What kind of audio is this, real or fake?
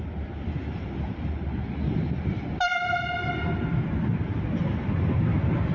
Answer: real